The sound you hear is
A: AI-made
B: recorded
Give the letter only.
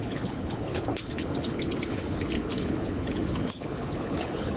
A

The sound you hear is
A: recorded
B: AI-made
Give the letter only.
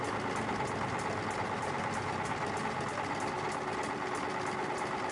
A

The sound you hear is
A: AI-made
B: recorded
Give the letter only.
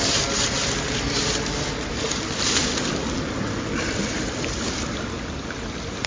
B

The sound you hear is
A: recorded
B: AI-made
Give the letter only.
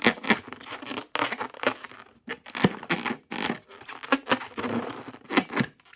A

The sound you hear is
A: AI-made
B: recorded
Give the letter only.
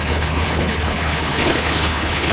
A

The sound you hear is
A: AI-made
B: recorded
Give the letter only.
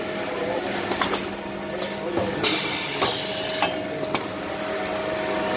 B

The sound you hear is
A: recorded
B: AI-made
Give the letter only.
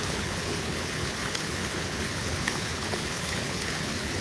B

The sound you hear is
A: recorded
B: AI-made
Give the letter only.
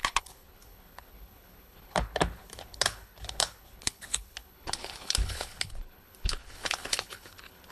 B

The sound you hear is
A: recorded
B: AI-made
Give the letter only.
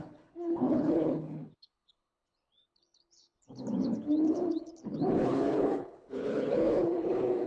B